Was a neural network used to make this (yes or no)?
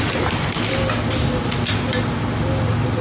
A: no